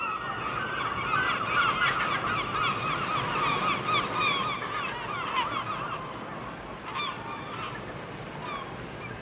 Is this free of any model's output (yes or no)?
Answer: yes